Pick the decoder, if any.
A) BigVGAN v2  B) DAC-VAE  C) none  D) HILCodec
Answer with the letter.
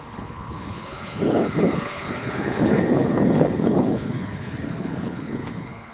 D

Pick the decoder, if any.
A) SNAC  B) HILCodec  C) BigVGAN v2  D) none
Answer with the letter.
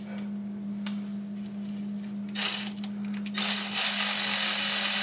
D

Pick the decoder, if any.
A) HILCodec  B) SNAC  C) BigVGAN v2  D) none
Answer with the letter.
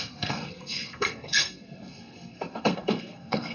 B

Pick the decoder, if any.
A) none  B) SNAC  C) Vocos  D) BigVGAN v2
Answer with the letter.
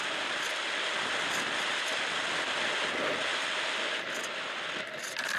A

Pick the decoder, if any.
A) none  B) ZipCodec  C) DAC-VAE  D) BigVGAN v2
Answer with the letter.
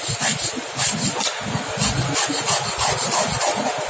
D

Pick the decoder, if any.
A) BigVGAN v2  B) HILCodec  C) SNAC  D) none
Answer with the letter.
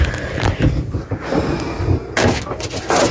D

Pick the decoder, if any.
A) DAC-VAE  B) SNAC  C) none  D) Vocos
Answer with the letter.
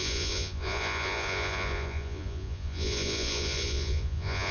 D